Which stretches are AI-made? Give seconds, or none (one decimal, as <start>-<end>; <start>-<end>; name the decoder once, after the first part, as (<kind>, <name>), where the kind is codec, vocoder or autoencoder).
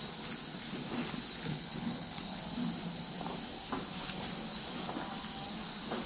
1.5-2.4 (codec, HILCodec)